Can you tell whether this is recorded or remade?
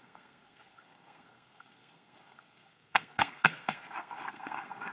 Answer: remade